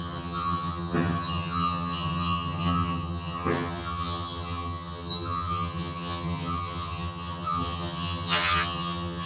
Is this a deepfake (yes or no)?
yes